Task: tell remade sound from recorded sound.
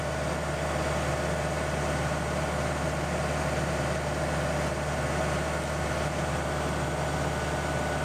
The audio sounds recorded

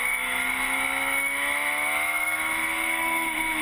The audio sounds remade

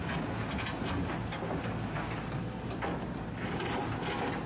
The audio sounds recorded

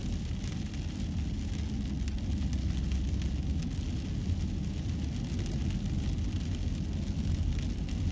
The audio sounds recorded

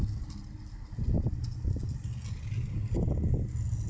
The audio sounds recorded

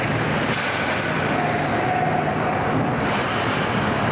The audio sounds remade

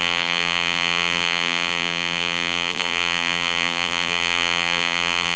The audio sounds remade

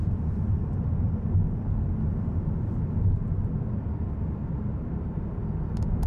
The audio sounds recorded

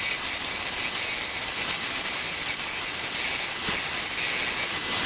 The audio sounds recorded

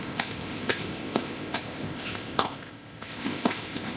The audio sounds remade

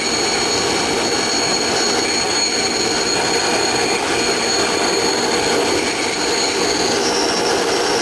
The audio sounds recorded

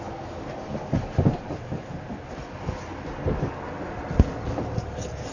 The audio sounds recorded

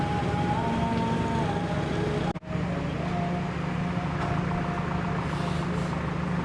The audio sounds recorded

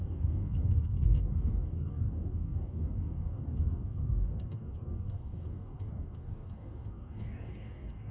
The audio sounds remade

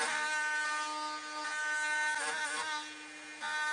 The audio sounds recorded